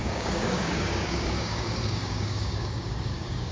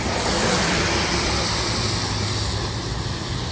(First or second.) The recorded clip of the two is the second